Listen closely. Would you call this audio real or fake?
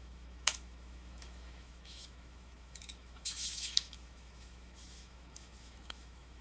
fake